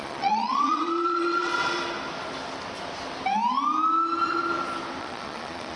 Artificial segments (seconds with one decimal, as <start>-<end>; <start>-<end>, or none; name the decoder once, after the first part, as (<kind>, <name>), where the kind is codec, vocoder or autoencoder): 0.0-1.5 (vocoder, Vocos); 5.0-5.8